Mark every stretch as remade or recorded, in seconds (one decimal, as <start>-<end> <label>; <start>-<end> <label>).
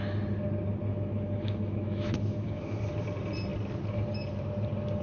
0.0-0.9 recorded; 0.9-2.8 remade; 2.8-5.0 recorded